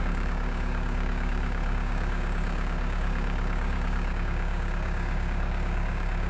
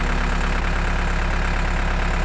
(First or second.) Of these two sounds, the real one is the second